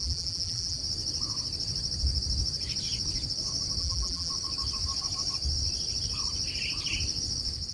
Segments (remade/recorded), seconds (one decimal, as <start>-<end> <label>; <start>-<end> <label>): 0.0-0.8 remade; 0.8-3.8 recorded; 3.8-4.3 remade; 4.3-7.7 recorded